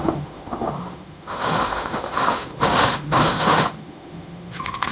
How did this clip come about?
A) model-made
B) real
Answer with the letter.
A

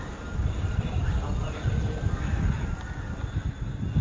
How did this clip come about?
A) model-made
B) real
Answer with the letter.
B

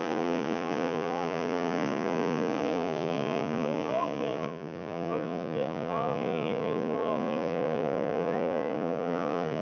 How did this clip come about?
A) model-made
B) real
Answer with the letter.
A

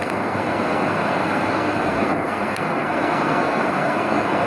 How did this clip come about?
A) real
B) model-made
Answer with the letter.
B